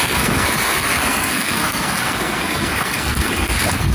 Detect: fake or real fake